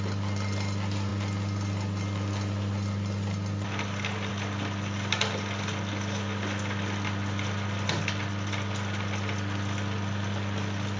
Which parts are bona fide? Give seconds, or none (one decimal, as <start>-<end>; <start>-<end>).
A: 0.0-11.0